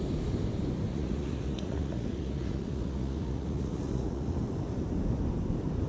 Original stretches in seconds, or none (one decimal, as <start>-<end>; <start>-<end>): 0.0-0.9; 4.4-5.9

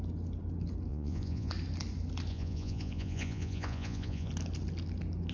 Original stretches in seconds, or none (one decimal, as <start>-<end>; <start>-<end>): 0.0-0.9; 1.5-2.3; 4.3-5.3

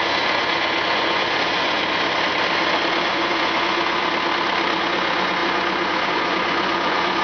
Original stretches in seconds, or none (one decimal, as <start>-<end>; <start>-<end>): 1.8-2.9; 4.0-4.8

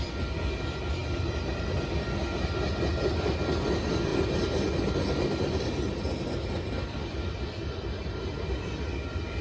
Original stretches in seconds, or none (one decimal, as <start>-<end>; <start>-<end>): 0.0-9.4

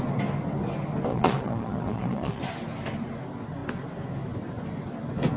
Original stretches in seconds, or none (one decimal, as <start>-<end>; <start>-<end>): 0.0-1.1; 2.4-5.4

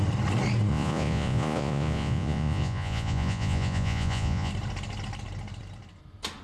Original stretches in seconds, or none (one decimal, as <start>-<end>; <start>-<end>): 0.0-0.7; 4.5-6.4

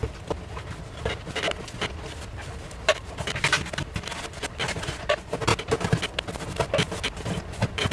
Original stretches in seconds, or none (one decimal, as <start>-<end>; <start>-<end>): 0.0-4.7; 5.5-7.4